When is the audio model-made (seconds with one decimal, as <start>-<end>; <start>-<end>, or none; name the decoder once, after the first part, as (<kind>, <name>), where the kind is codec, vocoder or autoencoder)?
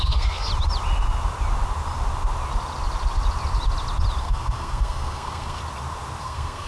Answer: 0.0-0.5 (codec, SNAC); 4.2-5.6; 6.2-6.7